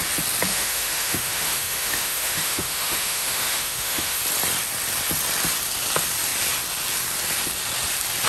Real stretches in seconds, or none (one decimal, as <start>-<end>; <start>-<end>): 0.0-0.5; 4.2-8.3